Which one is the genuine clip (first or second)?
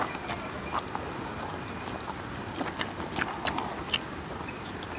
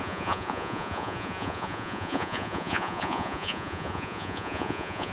first